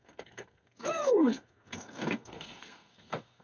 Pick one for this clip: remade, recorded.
remade